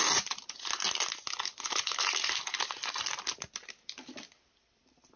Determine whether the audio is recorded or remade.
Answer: recorded